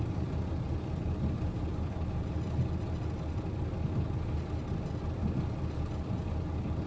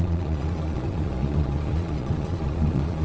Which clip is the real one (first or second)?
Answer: first